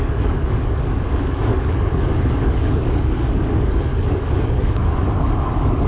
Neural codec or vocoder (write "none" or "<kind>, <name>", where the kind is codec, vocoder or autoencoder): codec, DAC